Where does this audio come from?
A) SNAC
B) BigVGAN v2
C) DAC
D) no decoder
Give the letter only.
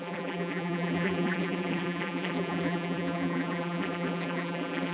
B